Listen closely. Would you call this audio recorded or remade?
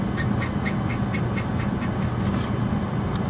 recorded